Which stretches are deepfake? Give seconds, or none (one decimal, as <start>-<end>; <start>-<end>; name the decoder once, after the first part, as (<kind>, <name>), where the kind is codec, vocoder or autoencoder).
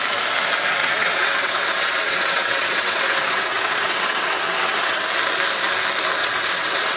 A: 0.8-5.0 (vocoder, WaveNeXt); 6.2-7.0